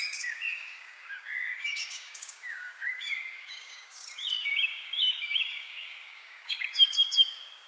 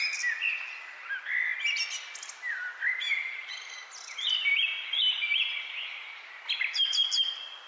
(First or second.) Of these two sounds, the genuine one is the second